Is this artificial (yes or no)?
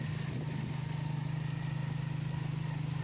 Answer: no